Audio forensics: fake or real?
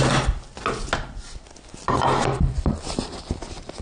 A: real